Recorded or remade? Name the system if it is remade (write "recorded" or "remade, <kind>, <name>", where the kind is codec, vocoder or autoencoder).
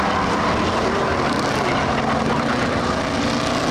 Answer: recorded